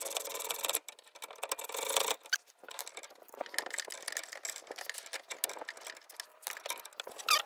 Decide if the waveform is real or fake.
real